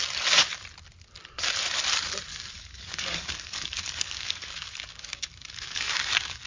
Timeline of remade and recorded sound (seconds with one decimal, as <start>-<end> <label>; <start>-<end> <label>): 0.0-2.3 recorded; 2.3-6.5 remade